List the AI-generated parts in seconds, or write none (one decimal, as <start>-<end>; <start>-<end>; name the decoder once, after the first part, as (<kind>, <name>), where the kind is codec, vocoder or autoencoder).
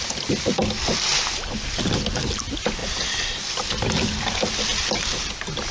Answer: none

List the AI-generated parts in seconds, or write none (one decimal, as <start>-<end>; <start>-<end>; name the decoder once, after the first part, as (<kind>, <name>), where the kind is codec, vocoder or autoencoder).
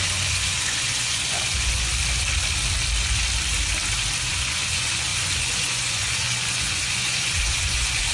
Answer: 0.0-1.9 (vocoder, Vocos); 4.3-8.1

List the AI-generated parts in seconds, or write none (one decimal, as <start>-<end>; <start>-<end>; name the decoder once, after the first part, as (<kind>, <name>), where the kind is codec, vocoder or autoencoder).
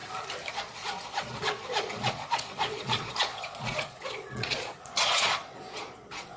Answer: 0.5-6.4 (vocoder, Vocos)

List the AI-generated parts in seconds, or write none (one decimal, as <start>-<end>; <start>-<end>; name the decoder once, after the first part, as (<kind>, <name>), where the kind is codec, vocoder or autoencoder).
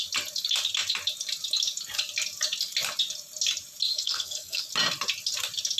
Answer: 3.9-4.6 (codec, SNAC)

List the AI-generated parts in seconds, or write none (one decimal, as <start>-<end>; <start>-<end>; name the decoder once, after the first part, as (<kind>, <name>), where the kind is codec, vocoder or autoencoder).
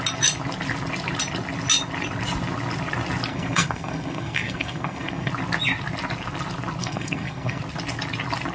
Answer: 3.3-5.3 (codec, SNAC); 6.8-7.6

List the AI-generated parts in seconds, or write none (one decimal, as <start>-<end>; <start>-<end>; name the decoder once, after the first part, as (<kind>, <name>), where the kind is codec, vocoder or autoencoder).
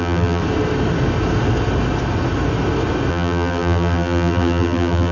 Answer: 0.0-0.4 (vocoder, BigVGAN v2); 3.1-5.1